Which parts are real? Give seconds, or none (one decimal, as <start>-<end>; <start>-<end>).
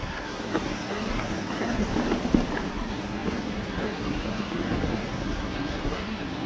1.9-2.7